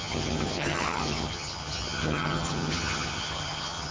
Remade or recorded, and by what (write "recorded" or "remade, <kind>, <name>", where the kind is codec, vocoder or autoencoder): remade, vocoder, HiFi-GAN